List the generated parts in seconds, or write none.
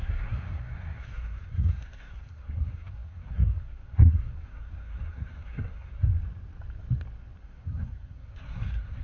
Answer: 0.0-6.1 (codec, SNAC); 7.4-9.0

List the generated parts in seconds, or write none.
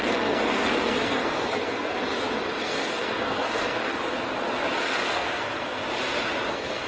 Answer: 0.0-1.9 (codec, SNAC); 2.6-4.0; 4.8-5.8; 6.5-6.9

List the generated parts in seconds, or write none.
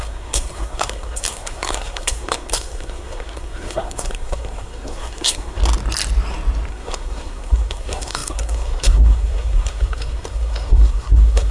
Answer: 0.0-5.6 (codec, SNAC); 6.7-11.5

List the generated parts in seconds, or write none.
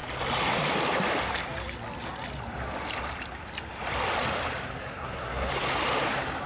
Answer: 4.8-5.5 (codec, SNAC)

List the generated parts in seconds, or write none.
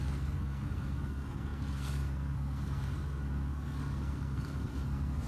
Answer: 0.0-5.3 (codec, SNAC)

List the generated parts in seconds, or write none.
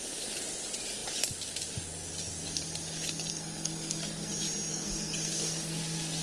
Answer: 3.3-4.3 (codec, SNAC); 4.7-5.8